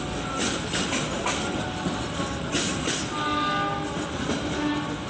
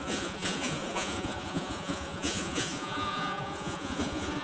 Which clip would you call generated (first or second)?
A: second